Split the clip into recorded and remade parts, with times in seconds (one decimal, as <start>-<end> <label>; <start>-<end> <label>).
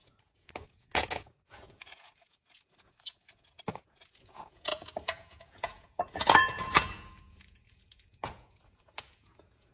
0.0-9.7 remade